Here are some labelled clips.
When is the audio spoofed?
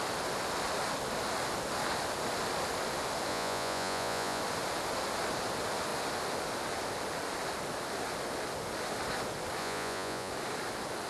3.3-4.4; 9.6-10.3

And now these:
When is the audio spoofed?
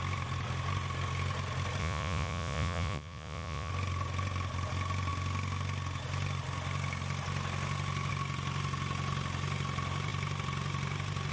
1.8-3.7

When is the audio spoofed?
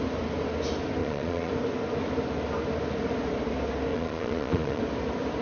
1.0-1.5; 3.9-4.8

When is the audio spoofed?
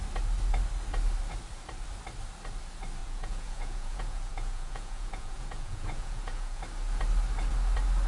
3.0-6.6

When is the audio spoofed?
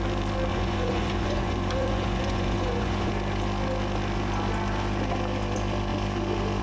0.5-3.1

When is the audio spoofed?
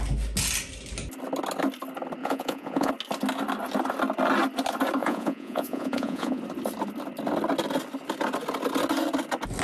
2.2-2.9; 5.0-6.4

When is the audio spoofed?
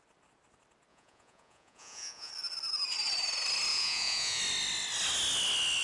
0.9-2.3; 3.7-4.4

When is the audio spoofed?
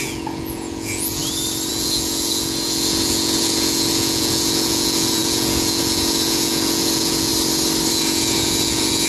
0.0-1.2; 1.7-7.3; 7.9-9.1